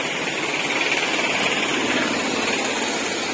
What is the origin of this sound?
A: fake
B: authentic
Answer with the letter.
B